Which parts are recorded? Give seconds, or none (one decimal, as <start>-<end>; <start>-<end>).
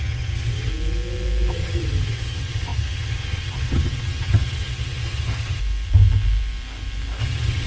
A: 0.7-1.5; 5.6-7.2